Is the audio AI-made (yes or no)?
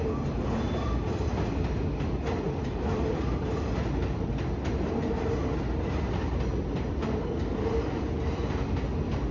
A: no